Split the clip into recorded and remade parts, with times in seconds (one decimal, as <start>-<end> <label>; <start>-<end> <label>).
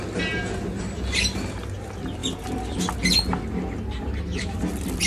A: 0.0-5.1 recorded